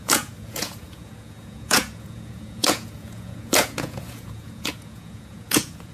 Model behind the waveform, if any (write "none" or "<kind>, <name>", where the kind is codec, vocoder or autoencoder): vocoder, Vocos